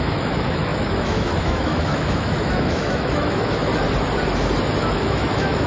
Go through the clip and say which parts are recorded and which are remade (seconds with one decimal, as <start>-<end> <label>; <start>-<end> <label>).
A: 0.0-3.7 remade; 3.7-4.8 recorded; 4.8-5.7 remade